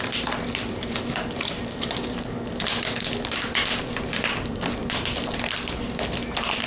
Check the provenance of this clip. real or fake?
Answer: real